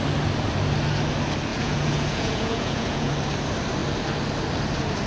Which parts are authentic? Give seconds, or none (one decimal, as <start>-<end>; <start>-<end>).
0.0-1.5; 3.1-5.1